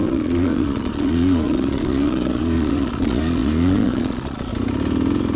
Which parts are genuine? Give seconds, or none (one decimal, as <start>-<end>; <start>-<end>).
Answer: 4.5-5.4